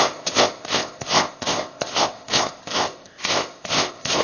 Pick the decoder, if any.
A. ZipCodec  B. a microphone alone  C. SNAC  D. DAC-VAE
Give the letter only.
A